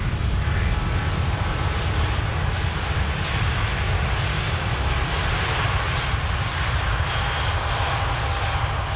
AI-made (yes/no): no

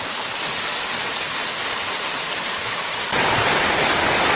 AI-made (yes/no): no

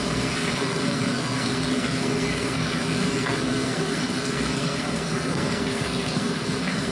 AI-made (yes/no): yes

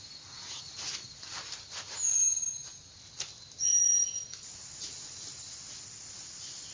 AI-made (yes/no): no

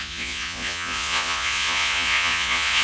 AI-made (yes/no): yes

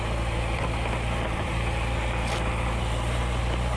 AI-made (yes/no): yes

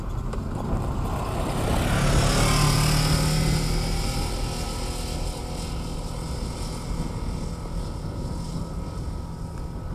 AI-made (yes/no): no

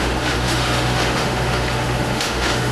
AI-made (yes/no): yes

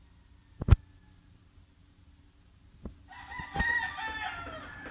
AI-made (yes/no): no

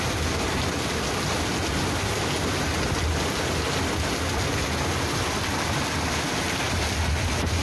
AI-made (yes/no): no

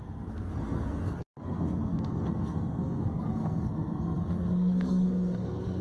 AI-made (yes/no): yes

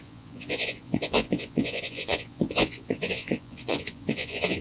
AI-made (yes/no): yes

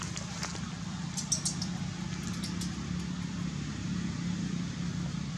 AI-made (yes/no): no